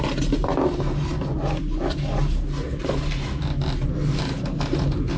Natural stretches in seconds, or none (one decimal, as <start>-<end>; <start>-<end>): 0.0-5.2